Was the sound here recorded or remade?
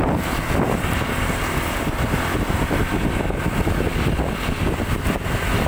recorded